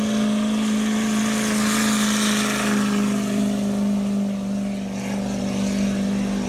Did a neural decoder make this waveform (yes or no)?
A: no